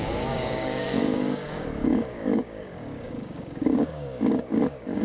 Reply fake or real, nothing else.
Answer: fake